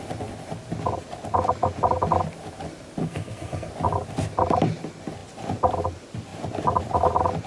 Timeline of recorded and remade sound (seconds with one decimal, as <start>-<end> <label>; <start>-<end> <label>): 0.0-3.0 recorded; 3.0-3.7 remade; 3.7-7.5 recorded